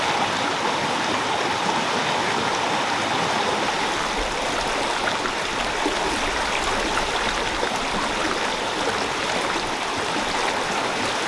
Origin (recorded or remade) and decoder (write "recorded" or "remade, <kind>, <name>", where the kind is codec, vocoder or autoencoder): recorded